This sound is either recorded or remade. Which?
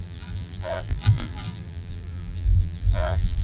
remade